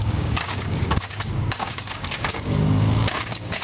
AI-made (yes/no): yes